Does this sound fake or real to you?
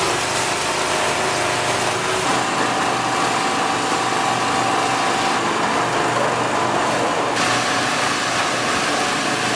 real